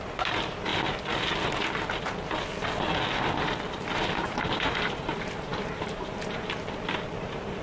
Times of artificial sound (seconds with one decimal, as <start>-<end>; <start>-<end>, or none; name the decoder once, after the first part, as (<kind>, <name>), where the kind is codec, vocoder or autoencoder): 0.0-0.7 (vocoder, BigVGAN v2); 4.2-7.6